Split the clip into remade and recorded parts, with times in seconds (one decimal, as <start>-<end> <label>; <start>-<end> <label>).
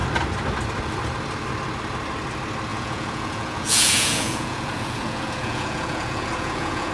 0.0-2.7 recorded; 2.7-6.9 remade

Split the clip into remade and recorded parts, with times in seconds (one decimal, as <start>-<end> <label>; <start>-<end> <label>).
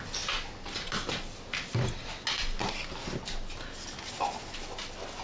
0.0-5.2 recorded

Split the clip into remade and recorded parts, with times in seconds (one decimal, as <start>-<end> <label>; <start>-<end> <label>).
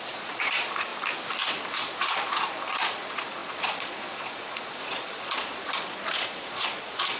0.0-0.9 remade; 0.9-1.5 recorded; 1.5-7.2 remade